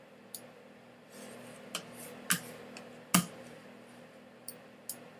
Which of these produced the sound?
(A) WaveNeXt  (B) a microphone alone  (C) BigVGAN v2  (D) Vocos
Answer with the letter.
B